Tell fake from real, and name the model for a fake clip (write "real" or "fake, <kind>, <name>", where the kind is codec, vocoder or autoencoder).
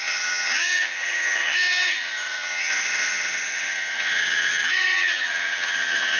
fake, vocoder, HiFi-GAN